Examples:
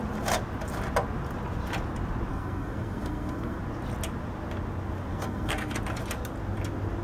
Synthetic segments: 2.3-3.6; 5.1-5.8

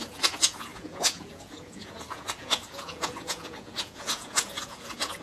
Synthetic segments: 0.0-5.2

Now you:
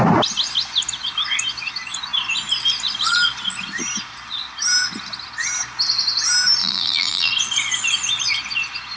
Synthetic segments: 6.6-7.3

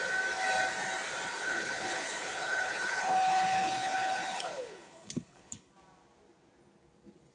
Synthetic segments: 1.3-5.7

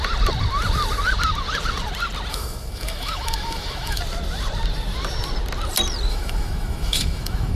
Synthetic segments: 2.3-4.0; 6.1-7.6

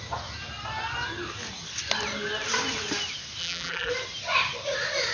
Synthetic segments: 3.4-3.9